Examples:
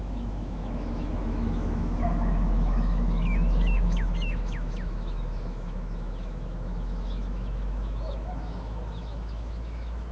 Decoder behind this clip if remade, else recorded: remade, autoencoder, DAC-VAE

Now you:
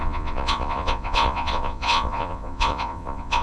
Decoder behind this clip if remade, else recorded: remade, vocoder, Vocos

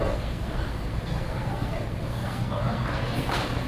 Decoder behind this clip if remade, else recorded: remade, codec, SNAC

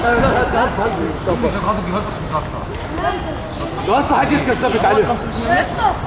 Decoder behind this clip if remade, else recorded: recorded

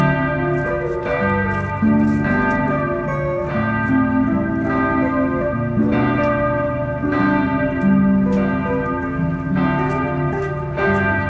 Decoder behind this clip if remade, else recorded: recorded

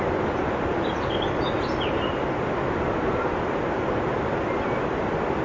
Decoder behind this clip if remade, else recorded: recorded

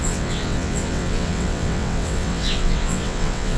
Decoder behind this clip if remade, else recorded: remade, vocoder, WaveNeXt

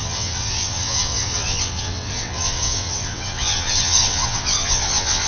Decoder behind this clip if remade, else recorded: remade, vocoder, WaveNeXt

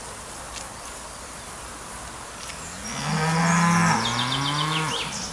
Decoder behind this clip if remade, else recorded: recorded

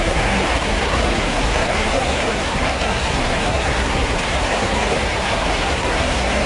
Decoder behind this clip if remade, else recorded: remade, codec, SNAC